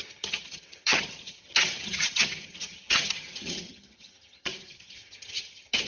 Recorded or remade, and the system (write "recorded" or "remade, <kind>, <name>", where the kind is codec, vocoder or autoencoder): remade, vocoder, HiFi-GAN